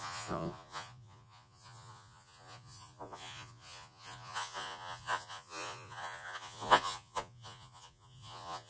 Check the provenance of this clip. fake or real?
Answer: fake